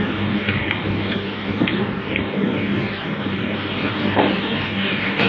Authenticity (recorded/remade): remade